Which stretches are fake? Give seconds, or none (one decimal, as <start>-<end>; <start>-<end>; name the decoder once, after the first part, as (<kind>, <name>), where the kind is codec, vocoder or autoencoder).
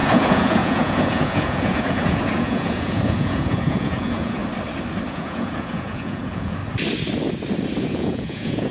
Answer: 0.0-4.4 (vocoder, Vocos); 5.1-6.6; 7.8-8.7